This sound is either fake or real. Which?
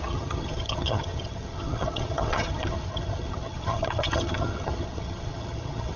fake